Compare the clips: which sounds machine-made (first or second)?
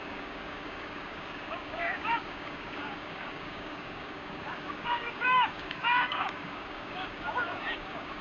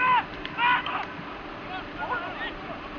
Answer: first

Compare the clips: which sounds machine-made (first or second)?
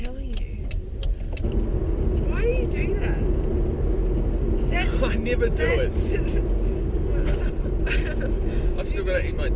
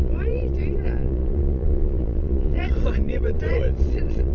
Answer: second